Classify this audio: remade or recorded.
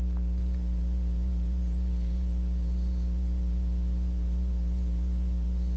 remade